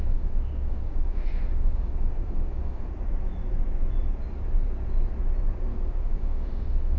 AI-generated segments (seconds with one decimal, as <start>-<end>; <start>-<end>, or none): 0.0-2.9; 6.0-7.0